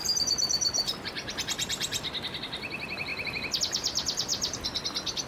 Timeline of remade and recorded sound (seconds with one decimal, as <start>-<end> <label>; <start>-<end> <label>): 0.0-2.4 remade; 2.4-3.1 recorded; 3.1-3.6 remade; 3.6-4.3 recorded; 4.3-4.8 remade; 4.8-5.3 recorded